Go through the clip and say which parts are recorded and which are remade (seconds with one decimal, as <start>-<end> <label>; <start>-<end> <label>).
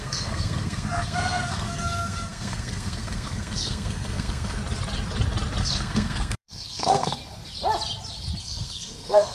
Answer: 0.0-4.6 remade; 4.6-5.6 recorded; 5.6-7.2 remade; 7.2-8.4 recorded; 8.4-9.3 remade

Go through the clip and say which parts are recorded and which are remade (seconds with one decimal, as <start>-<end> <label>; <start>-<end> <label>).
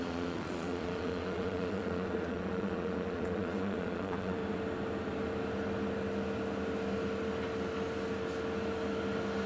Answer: 0.0-4.4 remade; 4.4-9.5 recorded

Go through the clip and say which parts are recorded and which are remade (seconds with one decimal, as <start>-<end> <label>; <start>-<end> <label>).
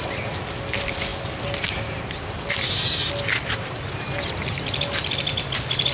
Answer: 0.0-5.9 recorded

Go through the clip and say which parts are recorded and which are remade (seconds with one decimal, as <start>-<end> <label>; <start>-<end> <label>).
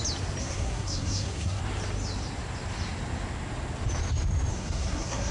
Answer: 0.0-0.4 recorded; 0.4-1.6 remade; 1.6-4.5 recorded; 4.5-5.3 remade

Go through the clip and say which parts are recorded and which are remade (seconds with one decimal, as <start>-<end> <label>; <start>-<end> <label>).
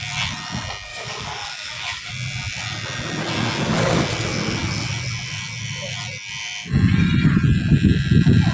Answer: 0.0-0.9 recorded; 0.9-2.1 remade; 2.1-8.5 recorded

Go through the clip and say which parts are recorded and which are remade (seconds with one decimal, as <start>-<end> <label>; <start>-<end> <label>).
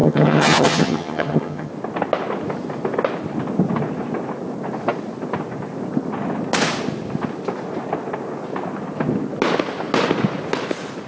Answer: 0.0-1.7 remade; 1.7-11.1 recorded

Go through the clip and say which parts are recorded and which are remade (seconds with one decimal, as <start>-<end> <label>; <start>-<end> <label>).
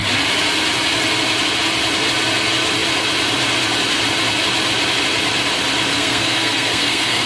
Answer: 0.0-5.9 recorded; 5.9-7.3 remade